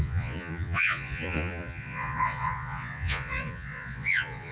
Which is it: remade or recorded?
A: remade